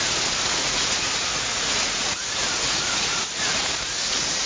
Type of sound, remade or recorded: remade